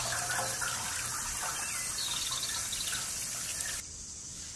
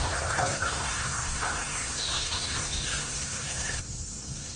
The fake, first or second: second